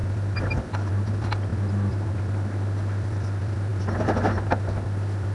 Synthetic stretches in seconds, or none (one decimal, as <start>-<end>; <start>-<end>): none